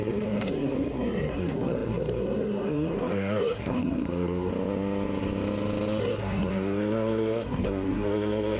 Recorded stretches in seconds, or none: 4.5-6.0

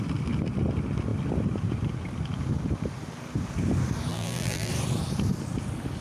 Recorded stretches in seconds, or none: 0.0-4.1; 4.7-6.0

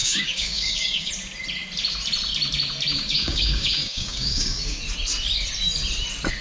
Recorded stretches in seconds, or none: 1.1-2.9; 4.8-6.4